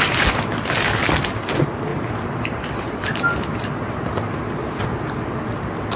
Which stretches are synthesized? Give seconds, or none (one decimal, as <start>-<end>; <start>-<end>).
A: 1.9-4.8